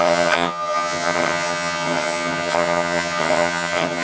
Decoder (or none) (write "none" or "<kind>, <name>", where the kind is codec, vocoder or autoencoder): vocoder, HiFi-GAN